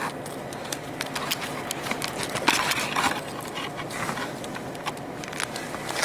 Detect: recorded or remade recorded